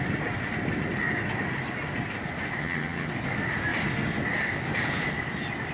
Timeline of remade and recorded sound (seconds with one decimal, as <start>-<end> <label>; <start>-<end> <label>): 0.0-2.6 recorded; 2.6-3.1 remade; 3.1-5.7 recorded